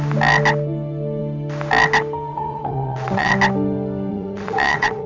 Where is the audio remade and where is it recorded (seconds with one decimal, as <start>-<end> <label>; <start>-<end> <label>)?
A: 0.0-2.3 recorded; 2.3-3.3 remade; 3.3-4.1 recorded; 4.1-5.1 remade